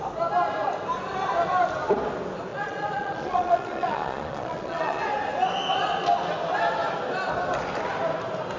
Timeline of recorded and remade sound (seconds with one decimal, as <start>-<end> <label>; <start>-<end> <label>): 0.0-2.5 recorded; 2.5-5.0 remade; 5.0-8.6 recorded